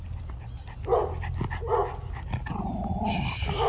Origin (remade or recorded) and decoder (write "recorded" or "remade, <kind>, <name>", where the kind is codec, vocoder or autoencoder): recorded